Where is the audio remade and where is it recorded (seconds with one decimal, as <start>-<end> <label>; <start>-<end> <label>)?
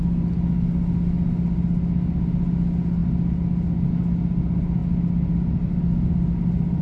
0.0-6.8 recorded